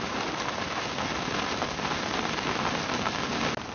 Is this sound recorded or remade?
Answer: recorded